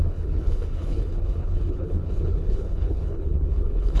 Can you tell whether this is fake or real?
fake